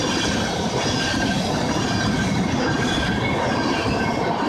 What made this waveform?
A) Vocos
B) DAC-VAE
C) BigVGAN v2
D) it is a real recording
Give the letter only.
D